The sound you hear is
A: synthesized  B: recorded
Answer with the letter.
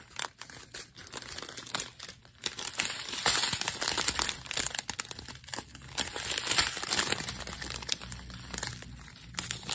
B